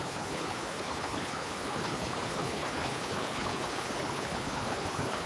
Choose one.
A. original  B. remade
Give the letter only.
B